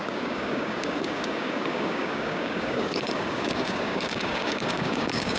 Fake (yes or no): yes